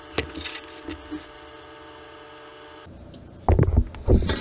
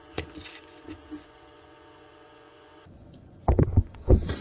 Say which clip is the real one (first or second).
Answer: first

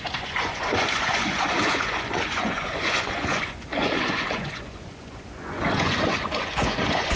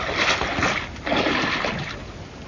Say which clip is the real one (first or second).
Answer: second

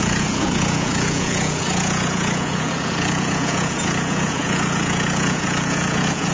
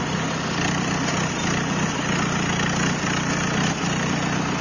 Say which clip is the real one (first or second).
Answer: second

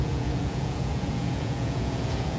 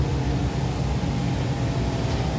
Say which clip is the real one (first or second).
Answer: second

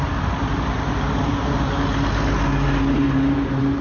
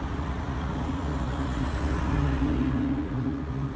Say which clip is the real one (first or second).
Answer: first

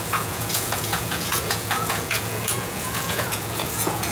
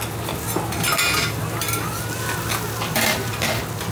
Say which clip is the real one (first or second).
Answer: second